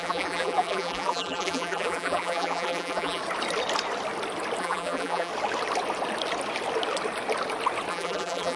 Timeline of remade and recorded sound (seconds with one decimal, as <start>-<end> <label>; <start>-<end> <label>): 0.0-3.2 remade; 3.2-4.6 recorded; 4.6-5.3 remade; 5.3-7.9 recorded; 7.9-8.6 remade